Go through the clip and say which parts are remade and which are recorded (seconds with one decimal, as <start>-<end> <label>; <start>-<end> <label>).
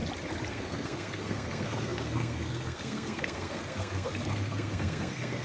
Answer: 0.0-0.5 recorded; 0.5-5.4 remade